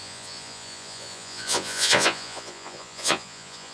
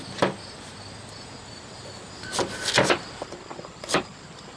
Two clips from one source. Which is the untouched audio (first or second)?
second